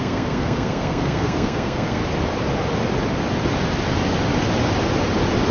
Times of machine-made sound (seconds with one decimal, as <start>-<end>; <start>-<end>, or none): 0.0-2.0